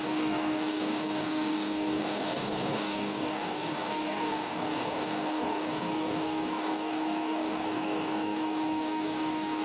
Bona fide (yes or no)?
no